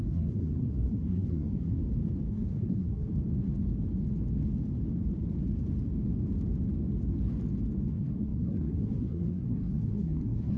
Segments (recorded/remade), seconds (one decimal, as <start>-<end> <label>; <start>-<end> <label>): 0.0-1.8 remade; 1.8-2.3 recorded; 2.3-3.1 remade; 3.1-7.9 recorded; 7.9-10.6 remade